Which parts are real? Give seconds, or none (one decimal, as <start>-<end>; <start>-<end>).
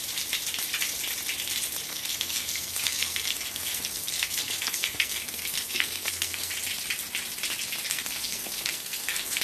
0.0-1.9; 6.5-7.9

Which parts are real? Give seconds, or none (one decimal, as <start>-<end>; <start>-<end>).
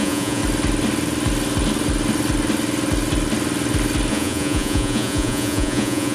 0.4-4.1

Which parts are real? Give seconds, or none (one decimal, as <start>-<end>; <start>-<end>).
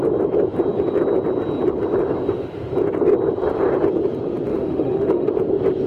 0.0-4.5; 5.3-5.9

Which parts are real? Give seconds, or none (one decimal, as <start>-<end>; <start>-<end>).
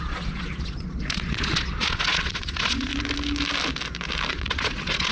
2.9-4.3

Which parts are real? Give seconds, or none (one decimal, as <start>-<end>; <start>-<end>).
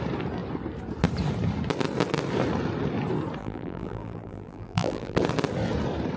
0.0-3.4; 5.2-6.2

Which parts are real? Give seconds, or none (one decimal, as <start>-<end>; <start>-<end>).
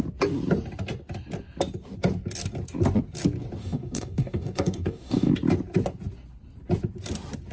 0.0-3.6; 5.3-7.5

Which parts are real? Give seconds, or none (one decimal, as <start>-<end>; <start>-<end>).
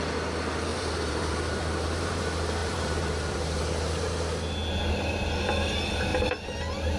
0.0-0.7; 2.2-2.6; 3.6-7.0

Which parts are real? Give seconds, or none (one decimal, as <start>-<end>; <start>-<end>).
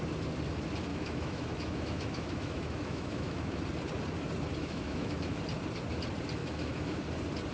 0.0-0.9; 3.6-4.6; 5.4-6.4; 7.0-7.5